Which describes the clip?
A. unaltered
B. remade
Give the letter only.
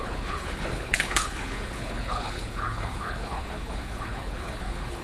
B